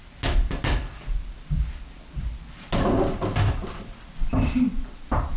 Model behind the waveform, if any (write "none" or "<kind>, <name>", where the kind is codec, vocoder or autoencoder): none